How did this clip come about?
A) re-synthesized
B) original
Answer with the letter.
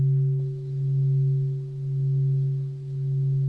B